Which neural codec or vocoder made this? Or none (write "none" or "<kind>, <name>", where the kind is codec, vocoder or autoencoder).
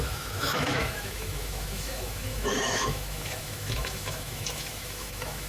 autoencoder, DAC-VAE